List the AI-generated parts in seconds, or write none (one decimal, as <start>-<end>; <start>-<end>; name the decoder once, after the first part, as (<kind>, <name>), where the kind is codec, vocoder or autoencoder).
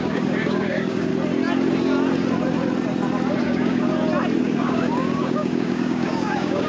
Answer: 0.0-1.1 (codec, DAC); 3.4-3.9; 4.4-6.7